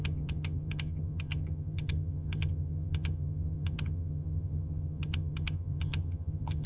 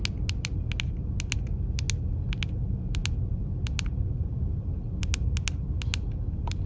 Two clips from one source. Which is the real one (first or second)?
second